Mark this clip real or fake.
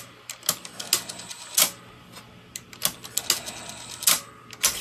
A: real